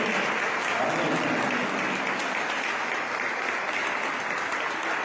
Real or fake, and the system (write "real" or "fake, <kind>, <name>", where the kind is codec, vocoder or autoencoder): real